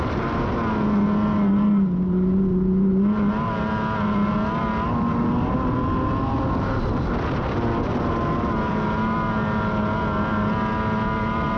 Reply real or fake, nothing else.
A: real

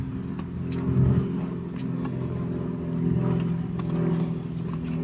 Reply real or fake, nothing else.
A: real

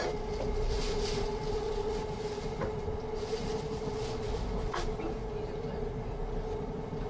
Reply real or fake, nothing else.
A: real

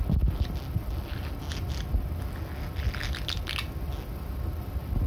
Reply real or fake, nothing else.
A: real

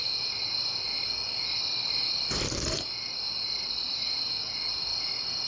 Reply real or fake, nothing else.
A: real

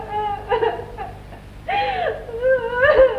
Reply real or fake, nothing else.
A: real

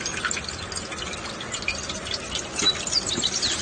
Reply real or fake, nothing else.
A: real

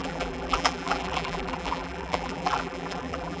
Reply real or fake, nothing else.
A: fake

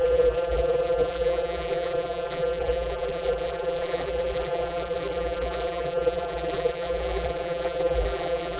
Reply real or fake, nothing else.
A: fake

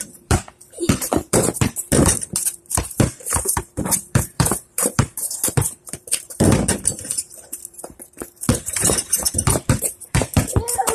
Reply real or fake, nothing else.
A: fake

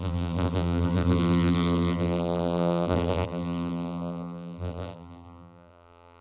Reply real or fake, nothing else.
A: fake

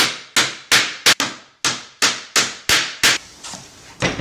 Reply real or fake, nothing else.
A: real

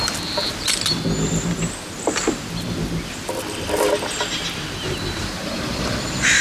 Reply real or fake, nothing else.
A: real